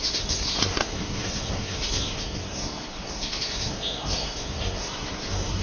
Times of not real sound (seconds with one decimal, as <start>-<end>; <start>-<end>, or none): 0.0-5.6